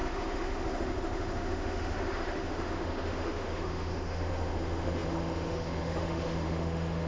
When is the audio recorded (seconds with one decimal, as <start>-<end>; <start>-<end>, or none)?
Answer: none